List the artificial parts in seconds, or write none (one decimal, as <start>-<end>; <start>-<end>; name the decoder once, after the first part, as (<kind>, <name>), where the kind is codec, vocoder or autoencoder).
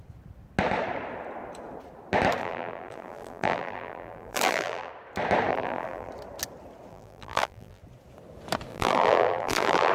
2.4-4.9 (vocoder, BigVGAN v2); 5.5-6.1; 6.9-7.8; 8.7-9.9